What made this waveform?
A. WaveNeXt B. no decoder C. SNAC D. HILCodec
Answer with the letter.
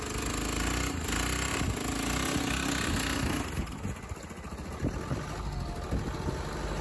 B